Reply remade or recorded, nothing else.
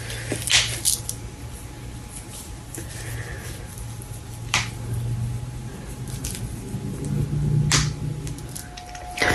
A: recorded